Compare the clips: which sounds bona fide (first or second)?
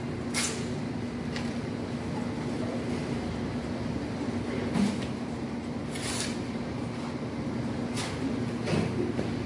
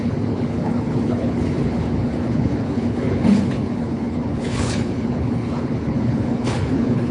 first